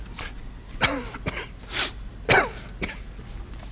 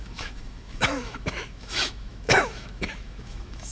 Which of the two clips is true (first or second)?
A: first